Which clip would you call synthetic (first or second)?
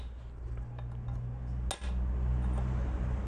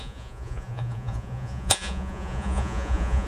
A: second